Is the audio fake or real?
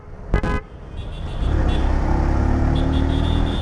real